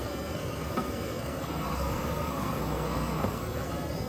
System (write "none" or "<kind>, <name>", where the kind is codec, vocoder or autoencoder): codec, SNAC